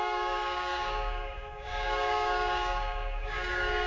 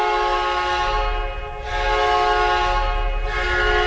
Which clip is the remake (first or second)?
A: first